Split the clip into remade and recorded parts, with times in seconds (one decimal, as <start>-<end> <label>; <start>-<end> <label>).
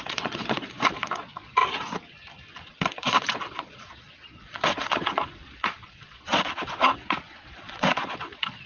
0.0-1.6 remade; 1.6-2.6 recorded; 2.6-8.7 remade